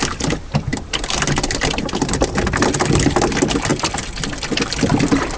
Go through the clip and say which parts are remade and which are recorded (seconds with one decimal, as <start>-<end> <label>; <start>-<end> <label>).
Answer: 0.0-5.4 recorded